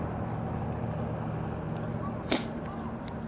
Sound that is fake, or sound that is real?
real